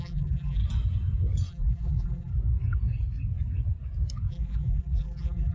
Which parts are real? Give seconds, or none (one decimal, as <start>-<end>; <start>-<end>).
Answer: 0.6-1.5; 2.3-4.3